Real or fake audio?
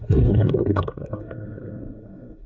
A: fake